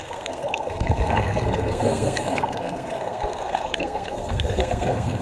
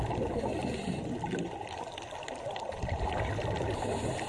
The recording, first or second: second